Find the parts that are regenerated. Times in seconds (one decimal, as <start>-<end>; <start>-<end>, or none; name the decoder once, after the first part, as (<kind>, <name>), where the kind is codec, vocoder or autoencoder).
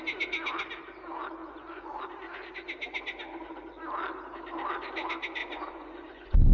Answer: 1.4-2.0 (vocoder, Vocos); 5.4-6.5